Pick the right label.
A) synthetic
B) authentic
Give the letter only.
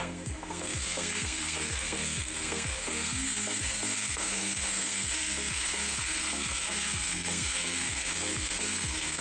A